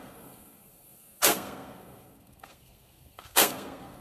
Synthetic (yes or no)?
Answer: yes